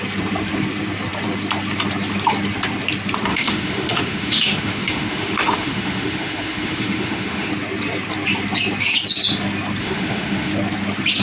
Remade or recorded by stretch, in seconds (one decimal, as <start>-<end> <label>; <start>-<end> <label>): 0.0-3.3 recorded; 3.3-7.5 remade; 7.5-9.8 recorded; 9.8-10.5 remade; 10.5-11.2 recorded